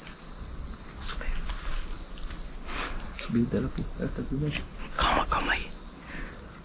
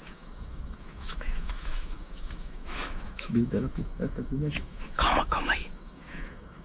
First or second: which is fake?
second